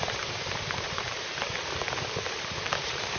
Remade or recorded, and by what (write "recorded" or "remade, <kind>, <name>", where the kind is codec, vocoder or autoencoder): remade, vocoder, BigVGAN v2